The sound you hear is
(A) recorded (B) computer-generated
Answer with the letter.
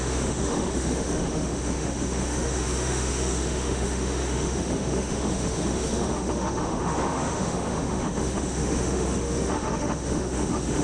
B